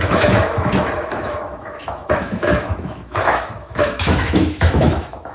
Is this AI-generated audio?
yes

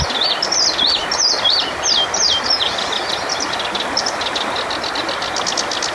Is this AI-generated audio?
no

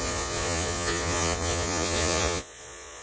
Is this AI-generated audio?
yes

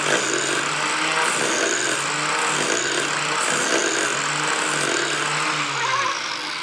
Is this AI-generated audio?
no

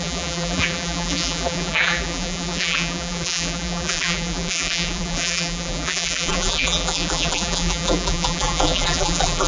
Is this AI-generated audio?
yes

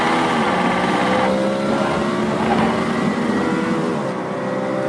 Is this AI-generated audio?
no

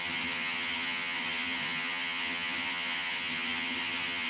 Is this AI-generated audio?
yes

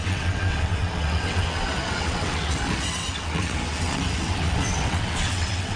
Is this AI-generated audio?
yes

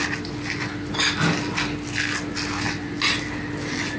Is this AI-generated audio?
no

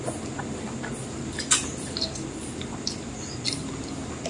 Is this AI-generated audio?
no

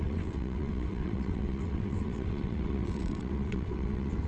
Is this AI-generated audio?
yes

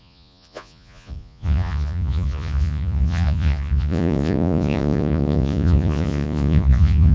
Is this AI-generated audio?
yes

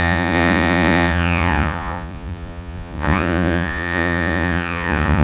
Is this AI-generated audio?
yes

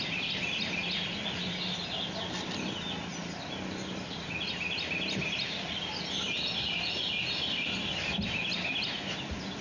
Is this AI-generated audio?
no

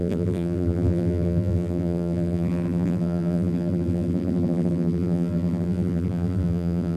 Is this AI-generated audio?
yes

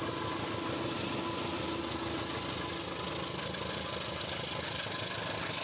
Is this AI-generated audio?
no